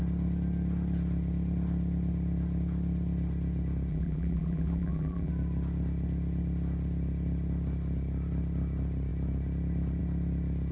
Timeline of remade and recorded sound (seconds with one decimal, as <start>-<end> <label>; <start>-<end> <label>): 0.0-3.9 recorded; 3.9-5.3 remade; 5.3-10.7 recorded